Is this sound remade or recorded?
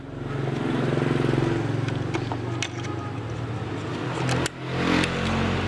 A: recorded